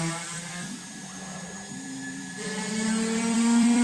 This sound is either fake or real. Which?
fake